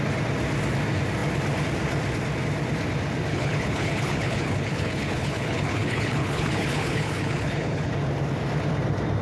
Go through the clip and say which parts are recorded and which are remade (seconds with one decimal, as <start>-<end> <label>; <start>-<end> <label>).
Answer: 0.0-3.3 recorded; 3.3-7.9 remade; 7.9-9.2 recorded